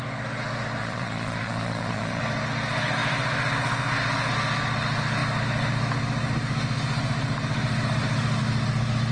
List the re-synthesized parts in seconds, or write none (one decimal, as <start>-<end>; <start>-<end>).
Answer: 0.8-2.2